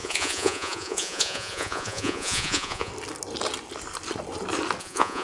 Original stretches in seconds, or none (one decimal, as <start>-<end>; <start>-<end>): 2.9-4.8